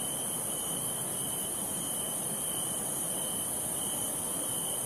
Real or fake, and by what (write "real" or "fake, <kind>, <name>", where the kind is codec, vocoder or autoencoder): real